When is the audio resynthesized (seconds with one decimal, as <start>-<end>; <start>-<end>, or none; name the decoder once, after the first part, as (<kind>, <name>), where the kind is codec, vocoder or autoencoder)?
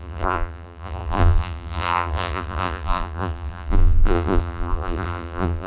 0.0-5.7 (vocoder, BigVGAN v2)